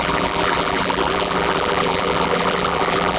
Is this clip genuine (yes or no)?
no